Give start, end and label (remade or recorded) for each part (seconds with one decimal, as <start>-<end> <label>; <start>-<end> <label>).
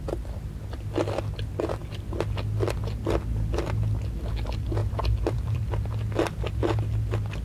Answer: 0.0-4.8 recorded; 4.8-5.9 remade; 5.9-7.4 recorded